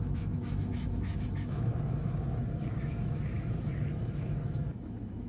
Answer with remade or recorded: remade